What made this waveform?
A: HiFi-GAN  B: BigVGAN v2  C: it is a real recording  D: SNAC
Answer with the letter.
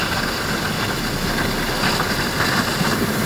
C